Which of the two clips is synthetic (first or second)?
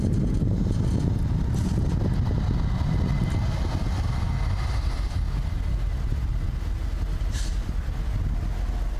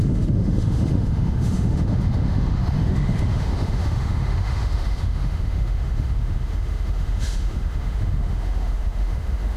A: second